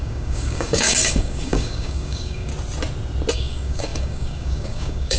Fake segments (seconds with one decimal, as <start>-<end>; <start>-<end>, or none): 0.0-2.5; 3.3-5.2